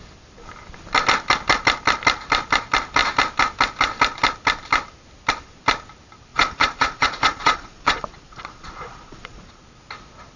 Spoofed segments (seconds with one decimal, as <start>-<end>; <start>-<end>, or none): 6.3-9.6